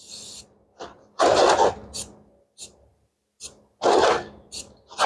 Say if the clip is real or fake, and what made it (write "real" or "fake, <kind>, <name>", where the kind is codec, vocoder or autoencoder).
real